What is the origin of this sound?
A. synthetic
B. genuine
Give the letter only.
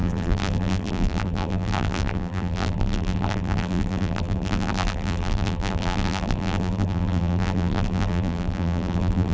A